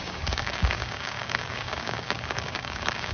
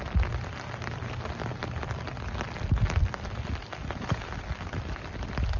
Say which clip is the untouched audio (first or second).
second